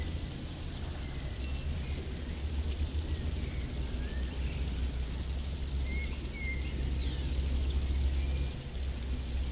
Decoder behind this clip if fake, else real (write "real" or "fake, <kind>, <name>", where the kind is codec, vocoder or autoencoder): real